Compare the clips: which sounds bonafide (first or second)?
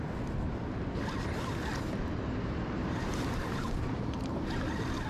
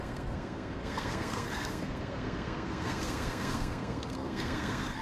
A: first